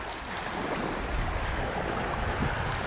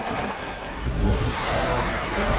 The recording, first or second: first